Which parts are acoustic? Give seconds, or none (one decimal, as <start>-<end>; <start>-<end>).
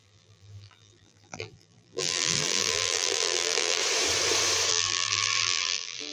3.8-4.7